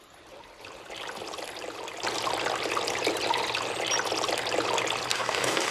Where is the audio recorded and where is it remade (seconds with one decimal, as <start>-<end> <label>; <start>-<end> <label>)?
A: 0.0-5.1 recorded; 5.1-5.7 remade